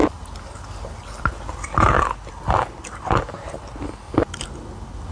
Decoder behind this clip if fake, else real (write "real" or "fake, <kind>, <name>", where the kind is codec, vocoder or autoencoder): real